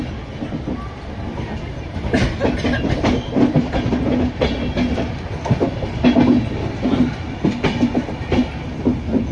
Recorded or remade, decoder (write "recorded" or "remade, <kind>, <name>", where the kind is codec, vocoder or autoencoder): recorded